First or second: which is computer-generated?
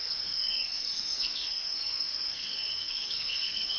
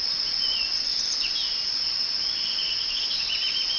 first